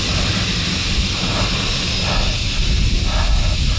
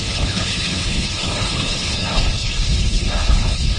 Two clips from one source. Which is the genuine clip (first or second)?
first